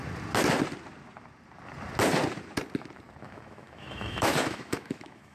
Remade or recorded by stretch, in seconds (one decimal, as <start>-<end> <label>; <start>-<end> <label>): 0.0-3.2 recorded; 3.2-5.3 remade